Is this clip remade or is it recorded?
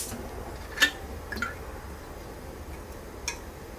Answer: recorded